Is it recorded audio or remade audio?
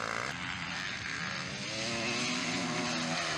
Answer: recorded